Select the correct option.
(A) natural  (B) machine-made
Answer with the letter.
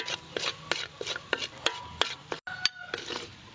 A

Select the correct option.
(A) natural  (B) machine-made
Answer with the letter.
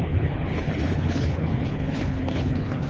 B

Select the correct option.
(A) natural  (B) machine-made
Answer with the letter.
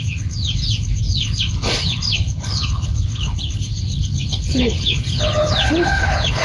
B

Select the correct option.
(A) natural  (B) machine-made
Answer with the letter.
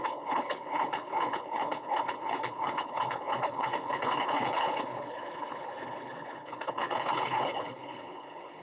B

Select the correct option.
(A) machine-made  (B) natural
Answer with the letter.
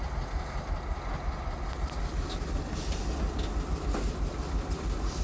B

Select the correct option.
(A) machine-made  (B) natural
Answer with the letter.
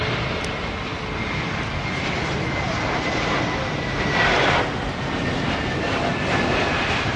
B